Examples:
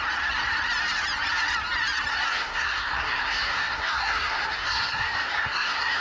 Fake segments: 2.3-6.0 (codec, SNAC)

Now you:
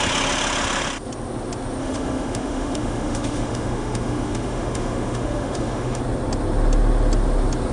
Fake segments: 1.8-6.0 (autoencoder, DAC-VAE)

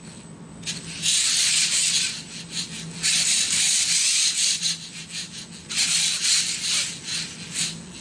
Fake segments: none

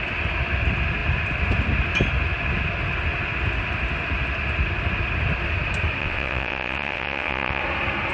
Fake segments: 6.0-7.6 (vocoder, WaveNeXt)